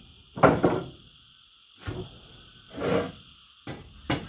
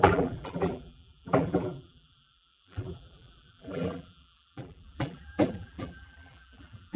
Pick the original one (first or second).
first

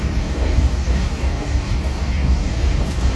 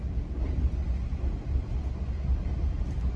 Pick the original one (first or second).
second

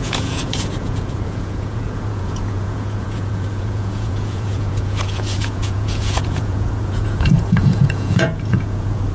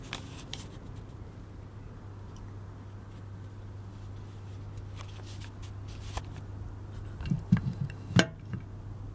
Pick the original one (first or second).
second